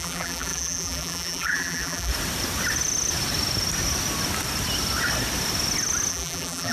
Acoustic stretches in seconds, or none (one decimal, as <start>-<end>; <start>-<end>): 2.1-6.1